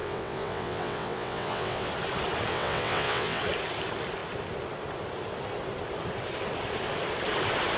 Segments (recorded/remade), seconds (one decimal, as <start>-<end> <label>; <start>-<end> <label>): 0.0-1.9 remade; 1.9-2.5 recorded; 2.5-3.4 remade; 3.4-7.8 recorded